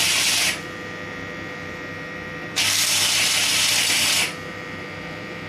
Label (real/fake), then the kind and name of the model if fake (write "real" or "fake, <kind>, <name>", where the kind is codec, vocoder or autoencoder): fake, vocoder, BigVGAN v2